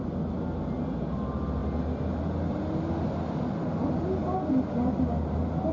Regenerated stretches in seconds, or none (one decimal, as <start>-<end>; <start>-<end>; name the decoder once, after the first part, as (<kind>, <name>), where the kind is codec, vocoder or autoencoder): none